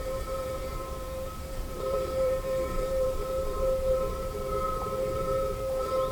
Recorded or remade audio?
remade